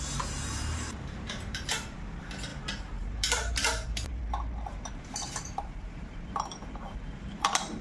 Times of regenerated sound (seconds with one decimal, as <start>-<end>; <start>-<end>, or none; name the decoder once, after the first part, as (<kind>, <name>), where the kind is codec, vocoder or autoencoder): 0.0-7.8 (vocoder, BigVGAN v2)